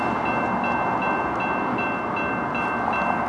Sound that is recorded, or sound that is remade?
recorded